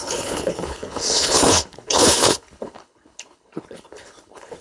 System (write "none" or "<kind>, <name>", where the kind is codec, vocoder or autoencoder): codec, HILCodec